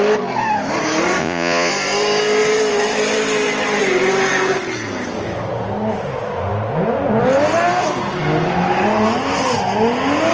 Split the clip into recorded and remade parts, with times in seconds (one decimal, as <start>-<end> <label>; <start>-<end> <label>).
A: 0.0-1.2 recorded; 1.2-1.7 remade; 1.7-10.3 recorded